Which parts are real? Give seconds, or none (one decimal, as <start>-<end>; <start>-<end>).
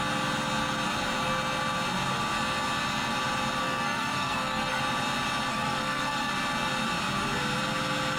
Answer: 0.0-3.6; 4.8-5.5; 6.3-8.2